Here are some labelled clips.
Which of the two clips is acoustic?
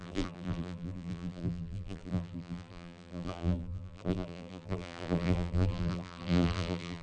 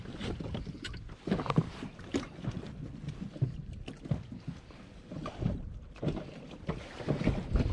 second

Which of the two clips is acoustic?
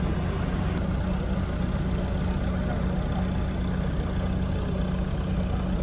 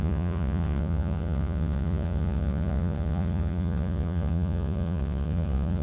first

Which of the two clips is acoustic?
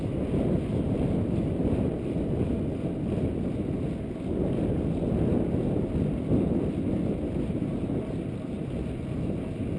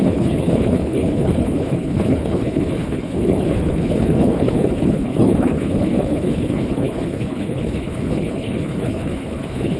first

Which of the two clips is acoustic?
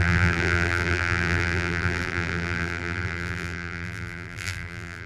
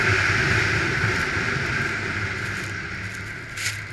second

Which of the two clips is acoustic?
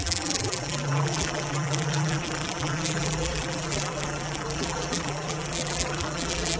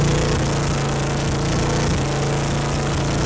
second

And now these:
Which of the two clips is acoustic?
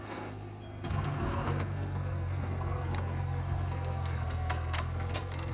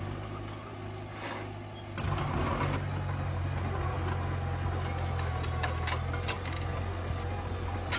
second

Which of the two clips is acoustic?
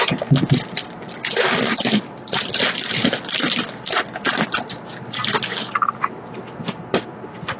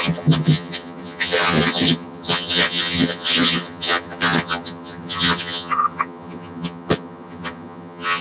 first